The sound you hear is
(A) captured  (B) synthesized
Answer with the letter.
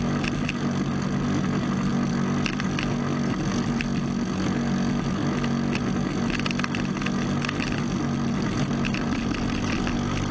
A